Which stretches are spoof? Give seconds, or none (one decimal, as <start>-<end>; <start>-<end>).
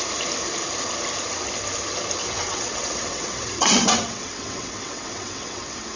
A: 2.2-6.0